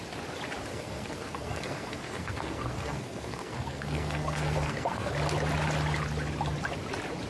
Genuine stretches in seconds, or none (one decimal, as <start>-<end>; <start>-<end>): 0.0-0.7; 5.1-7.3